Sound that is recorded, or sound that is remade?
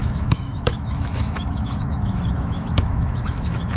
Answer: remade